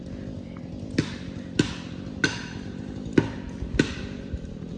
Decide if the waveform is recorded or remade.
recorded